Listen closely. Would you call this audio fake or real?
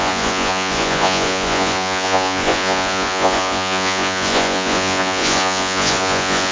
fake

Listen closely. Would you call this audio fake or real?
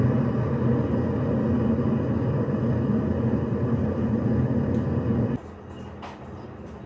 real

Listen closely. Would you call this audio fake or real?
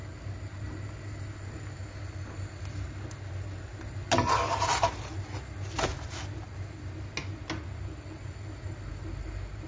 real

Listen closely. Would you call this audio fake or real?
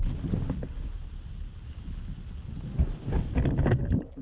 real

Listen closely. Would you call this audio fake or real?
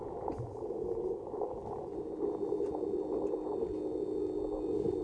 real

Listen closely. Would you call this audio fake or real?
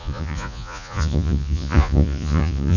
fake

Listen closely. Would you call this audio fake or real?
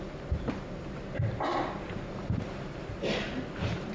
real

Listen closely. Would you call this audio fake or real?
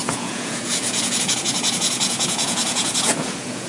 fake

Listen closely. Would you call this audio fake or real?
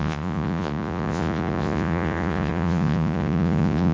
fake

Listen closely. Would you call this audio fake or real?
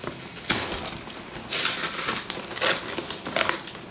real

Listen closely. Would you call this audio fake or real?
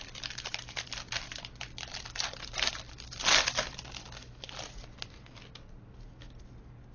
real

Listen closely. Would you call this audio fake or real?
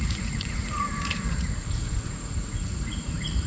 fake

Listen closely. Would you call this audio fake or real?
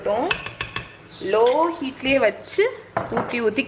real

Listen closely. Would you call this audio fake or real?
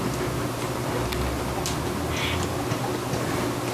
real